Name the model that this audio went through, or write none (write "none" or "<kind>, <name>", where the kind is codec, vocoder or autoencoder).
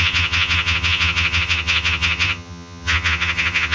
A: vocoder, HiFi-GAN